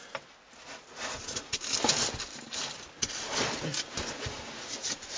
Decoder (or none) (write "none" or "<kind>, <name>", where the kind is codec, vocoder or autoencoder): none